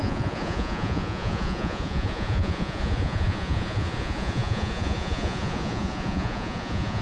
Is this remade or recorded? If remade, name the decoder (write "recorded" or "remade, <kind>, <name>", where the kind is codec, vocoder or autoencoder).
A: remade, vocoder, Vocos